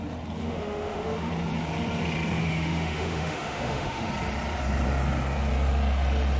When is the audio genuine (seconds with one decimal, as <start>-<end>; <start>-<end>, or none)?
0.0-0.4; 1.3-2.4; 4.1-6.4